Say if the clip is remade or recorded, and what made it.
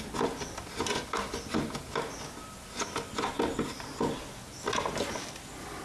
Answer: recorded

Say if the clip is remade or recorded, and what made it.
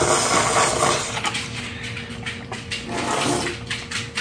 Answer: recorded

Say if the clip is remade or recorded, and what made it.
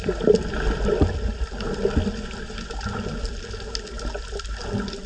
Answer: recorded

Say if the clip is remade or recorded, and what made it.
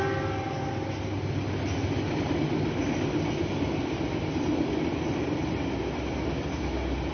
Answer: recorded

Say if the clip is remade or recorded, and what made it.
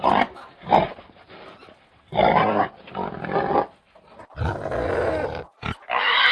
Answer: recorded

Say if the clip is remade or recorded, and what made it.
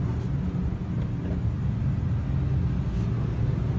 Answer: recorded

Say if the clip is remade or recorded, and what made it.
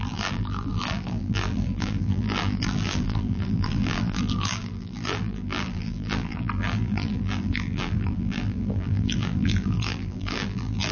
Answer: remade, vocoder, BigVGAN v2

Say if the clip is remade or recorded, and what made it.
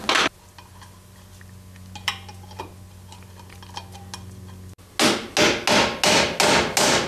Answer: recorded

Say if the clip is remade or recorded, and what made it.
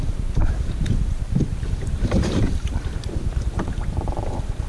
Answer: remade, vocoder, BigVGAN v2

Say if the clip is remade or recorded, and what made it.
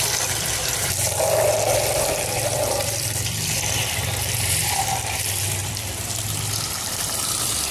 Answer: remade, vocoder, BigVGAN v2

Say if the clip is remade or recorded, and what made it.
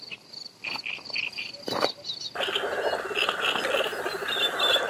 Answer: recorded